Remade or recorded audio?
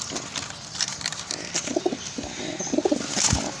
recorded